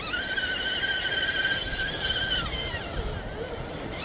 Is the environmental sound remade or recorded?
remade